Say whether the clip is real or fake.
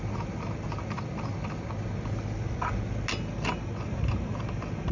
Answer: real